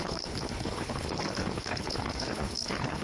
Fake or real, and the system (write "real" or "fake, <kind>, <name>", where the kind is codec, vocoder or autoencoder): fake, codec, HILCodec